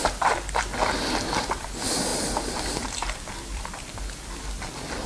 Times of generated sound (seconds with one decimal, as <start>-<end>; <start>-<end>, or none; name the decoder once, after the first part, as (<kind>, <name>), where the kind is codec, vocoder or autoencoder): 0.0-0.6 (vocoder, BigVGAN v2); 2.1-3.7